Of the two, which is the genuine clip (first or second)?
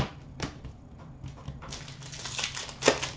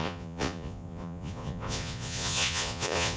first